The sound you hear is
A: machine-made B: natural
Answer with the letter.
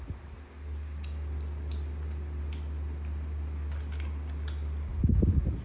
B